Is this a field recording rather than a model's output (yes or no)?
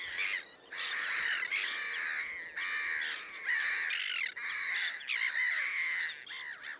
yes